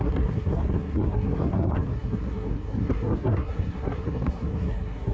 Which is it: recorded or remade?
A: remade